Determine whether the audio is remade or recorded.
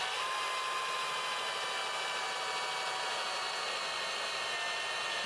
recorded